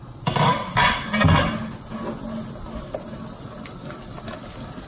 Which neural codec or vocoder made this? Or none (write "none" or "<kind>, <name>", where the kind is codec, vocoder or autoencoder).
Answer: none